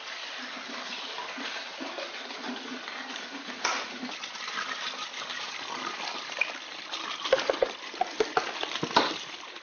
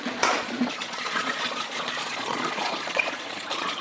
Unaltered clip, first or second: first